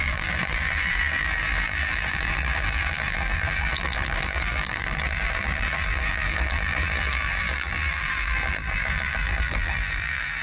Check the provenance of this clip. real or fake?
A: fake